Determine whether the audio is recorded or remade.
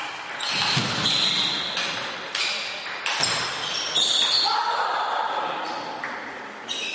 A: recorded